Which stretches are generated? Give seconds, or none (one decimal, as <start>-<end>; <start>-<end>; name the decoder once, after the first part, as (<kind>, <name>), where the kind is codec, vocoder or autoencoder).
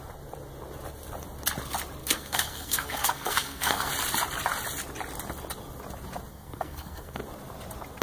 2.0-3.9 (codec, SNAC); 6.3-7.2